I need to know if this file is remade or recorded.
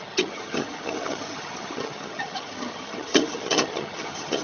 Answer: remade